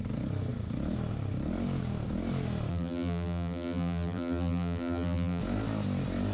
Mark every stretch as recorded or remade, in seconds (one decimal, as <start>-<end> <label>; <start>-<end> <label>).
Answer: 0.0-2.7 recorded; 2.7-5.4 remade; 5.4-6.3 recorded